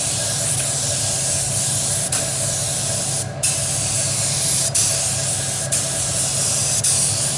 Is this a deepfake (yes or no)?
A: no